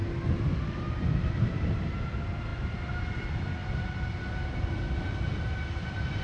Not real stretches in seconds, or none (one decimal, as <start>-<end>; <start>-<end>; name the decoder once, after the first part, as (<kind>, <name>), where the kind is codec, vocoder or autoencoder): none